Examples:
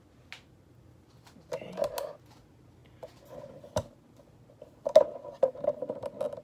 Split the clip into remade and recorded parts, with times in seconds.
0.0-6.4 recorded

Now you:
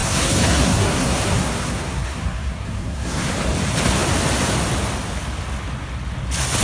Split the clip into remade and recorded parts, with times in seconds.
0.0-3.3 remade; 3.3-6.6 recorded

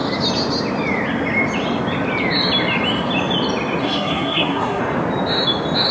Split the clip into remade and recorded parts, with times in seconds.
0.0-3.8 recorded; 3.8-4.8 remade; 4.8-5.9 recorded

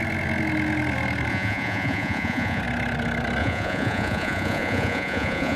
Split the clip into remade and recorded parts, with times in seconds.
0.0-1.3 recorded; 1.3-2.6 remade; 2.6-3.4 recorded; 3.4-5.6 remade